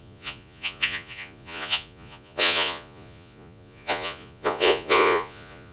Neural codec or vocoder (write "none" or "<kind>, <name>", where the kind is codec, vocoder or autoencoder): vocoder, Vocos